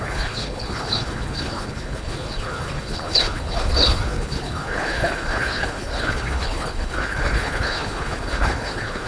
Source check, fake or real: fake